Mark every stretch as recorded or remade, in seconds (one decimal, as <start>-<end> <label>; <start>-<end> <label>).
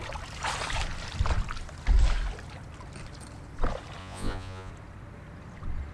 0.0-4.0 recorded; 4.0-4.7 remade; 4.7-5.9 recorded